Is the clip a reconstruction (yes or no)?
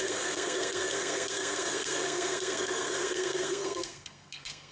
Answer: yes